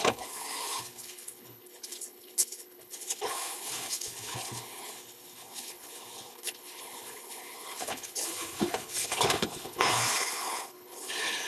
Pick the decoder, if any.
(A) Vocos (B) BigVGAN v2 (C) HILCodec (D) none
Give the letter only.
C